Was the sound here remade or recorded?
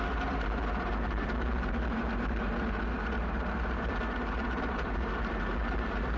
remade